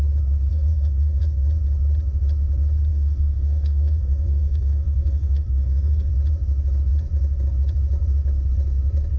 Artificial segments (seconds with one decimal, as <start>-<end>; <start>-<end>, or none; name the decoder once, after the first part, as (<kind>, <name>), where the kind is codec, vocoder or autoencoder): 0.5-1.2 (codec, SNAC); 2.9-6.1